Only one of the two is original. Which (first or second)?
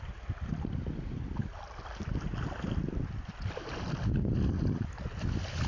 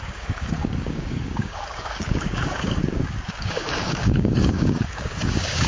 first